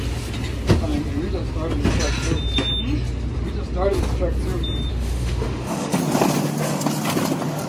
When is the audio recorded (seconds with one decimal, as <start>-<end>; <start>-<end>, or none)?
0.0-4.9; 6.0-7.7